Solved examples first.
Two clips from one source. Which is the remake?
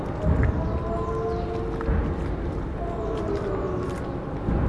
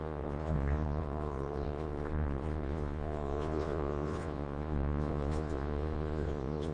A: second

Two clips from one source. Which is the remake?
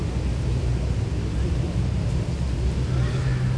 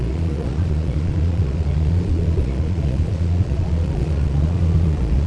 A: second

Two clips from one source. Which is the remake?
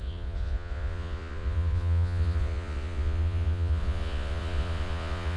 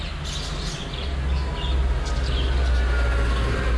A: first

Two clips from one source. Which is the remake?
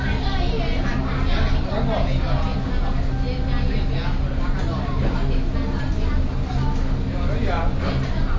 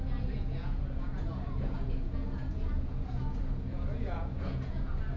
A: second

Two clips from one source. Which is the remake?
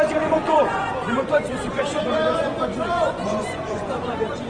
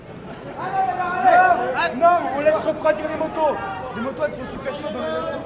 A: first